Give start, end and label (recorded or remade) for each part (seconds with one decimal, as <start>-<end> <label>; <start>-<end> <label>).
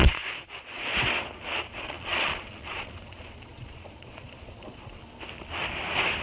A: 0.0-0.9 remade; 0.9-1.7 recorded; 1.7-5.0 remade; 5.0-6.2 recorded